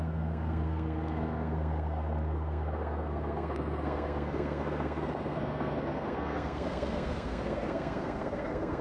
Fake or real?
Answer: fake